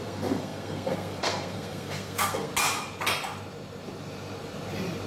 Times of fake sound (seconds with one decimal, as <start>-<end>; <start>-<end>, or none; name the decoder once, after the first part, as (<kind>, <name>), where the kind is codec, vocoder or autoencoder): 0.0-2.5 (codec, SNAC)